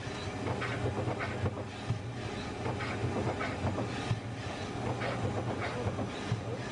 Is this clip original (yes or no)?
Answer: yes